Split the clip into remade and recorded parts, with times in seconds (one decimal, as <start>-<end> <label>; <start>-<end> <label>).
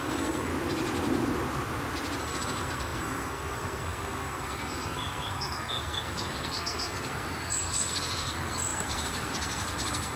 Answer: 0.0-0.5 remade; 0.5-2.2 recorded; 2.2-10.2 remade